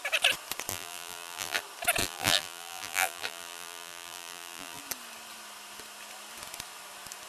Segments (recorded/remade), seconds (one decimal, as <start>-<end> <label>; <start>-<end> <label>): 0.0-0.7 recorded; 0.7-1.6 remade; 1.6-2.0 recorded; 2.0-4.8 remade; 4.8-7.3 recorded